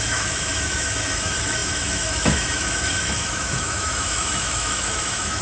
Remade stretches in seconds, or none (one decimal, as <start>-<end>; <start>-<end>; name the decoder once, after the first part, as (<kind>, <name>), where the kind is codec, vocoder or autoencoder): 0.0-5.4 (autoencoder, DAC-VAE)